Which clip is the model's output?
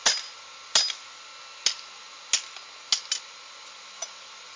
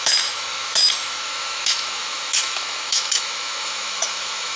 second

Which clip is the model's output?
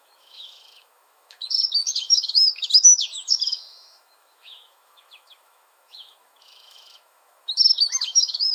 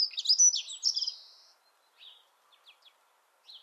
first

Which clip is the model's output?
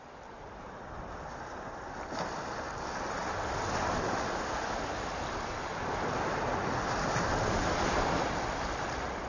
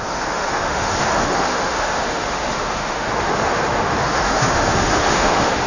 second